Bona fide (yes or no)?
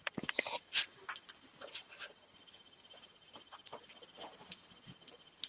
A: yes